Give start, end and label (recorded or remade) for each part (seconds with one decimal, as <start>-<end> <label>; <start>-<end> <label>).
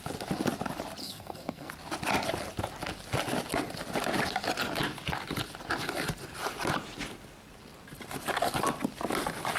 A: 0.0-1.0 recorded; 1.0-1.7 remade; 1.7-9.6 recorded